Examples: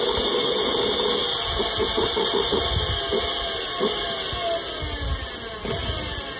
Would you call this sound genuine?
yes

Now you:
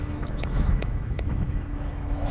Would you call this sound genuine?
no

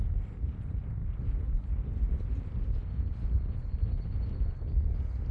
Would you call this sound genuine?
yes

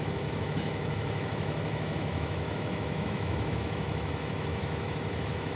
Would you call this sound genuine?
no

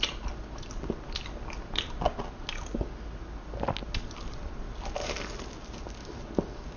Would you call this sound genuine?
yes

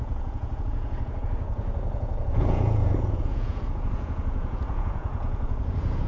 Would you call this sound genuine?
no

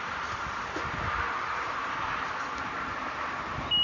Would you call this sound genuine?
yes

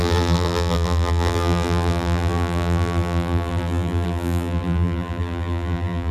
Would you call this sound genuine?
no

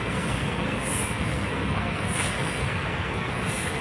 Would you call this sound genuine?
no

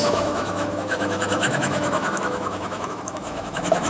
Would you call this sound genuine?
no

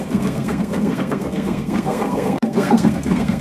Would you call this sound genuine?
no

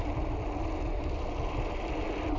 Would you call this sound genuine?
yes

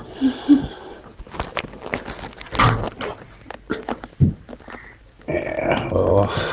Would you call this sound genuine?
yes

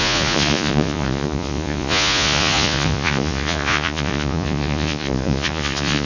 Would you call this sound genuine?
no